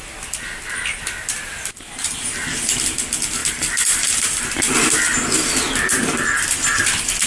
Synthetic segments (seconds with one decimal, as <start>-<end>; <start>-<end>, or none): none